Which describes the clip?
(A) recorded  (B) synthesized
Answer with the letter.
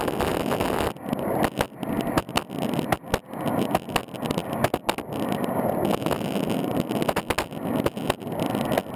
A